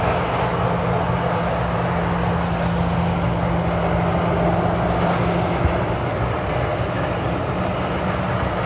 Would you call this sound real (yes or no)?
yes